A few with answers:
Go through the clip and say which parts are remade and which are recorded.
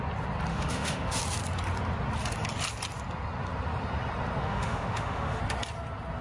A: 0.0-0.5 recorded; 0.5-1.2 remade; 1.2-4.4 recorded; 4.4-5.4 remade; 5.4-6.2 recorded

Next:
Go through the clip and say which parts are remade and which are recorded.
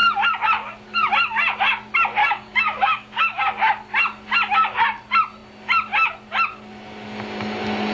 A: 0.0-2.2 recorded; 2.2-3.4 remade; 3.4-7.9 recorded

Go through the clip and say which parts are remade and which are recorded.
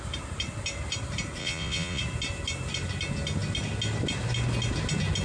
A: 0.0-1.4 recorded; 1.4-2.0 remade; 2.0-5.2 recorded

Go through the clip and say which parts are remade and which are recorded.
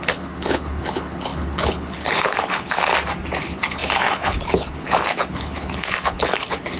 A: 0.0-2.9 remade; 2.9-3.4 recorded; 3.4-6.8 remade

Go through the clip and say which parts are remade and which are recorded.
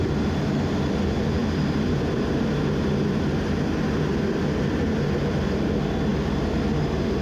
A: 0.0-7.2 recorded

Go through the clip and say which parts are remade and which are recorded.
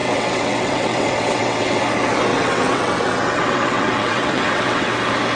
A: 0.0-1.8 remade; 1.8-2.3 recorded; 2.3-4.9 remade; 4.9-5.4 recorded